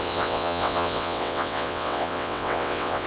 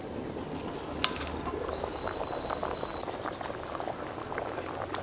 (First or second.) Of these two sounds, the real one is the second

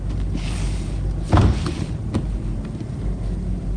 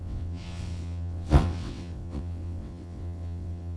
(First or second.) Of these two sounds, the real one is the first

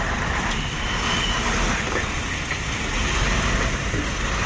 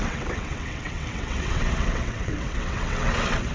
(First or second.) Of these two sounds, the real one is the first